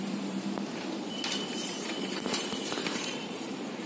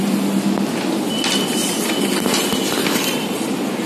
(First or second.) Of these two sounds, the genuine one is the second